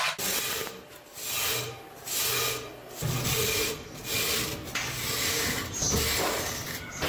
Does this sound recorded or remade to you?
recorded